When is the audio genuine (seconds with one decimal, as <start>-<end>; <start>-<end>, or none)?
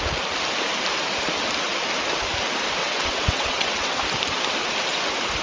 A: 0.0-2.8; 4.0-5.4